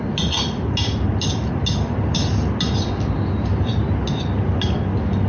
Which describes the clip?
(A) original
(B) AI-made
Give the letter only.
A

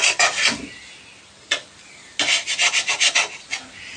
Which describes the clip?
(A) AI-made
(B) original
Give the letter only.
B